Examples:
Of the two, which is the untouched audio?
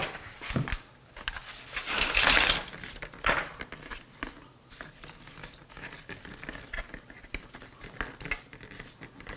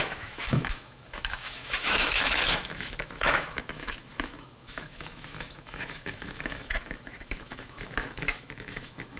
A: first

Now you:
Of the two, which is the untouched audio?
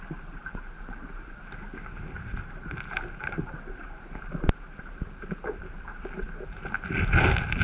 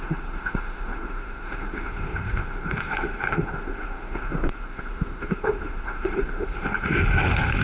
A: first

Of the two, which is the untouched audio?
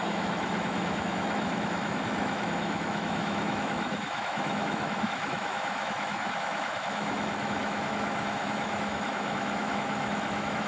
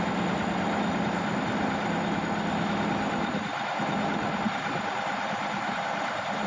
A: second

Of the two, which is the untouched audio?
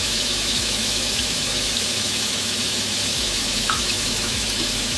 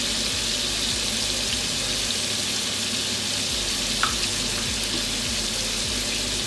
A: second